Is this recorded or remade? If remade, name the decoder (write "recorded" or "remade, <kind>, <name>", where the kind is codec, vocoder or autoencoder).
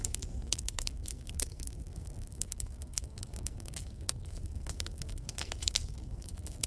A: remade, codec, SNAC